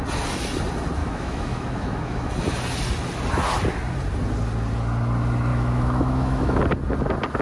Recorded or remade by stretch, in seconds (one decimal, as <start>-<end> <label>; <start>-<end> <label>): 0.0-1.0 recorded; 1.0-2.3 remade; 2.3-5.5 recorded; 5.5-6.6 remade; 6.6-7.4 recorded